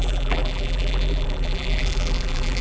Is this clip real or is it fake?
fake